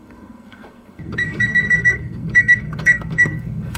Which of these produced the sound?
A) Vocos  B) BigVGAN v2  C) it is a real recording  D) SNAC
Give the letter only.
D